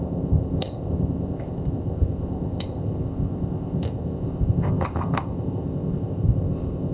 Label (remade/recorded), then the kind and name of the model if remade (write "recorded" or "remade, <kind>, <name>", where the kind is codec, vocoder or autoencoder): remade, codec, ZipCodec